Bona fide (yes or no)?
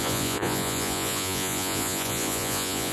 no